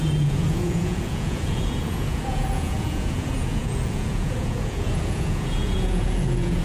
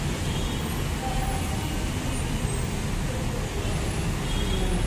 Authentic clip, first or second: second